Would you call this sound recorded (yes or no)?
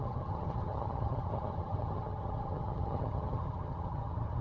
no